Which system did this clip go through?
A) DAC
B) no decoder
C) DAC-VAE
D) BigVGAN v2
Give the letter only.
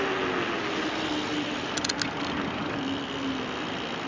B